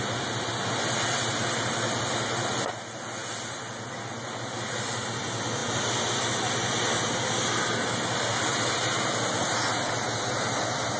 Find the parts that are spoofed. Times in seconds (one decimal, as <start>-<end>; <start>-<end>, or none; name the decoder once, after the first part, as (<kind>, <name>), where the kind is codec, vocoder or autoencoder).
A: none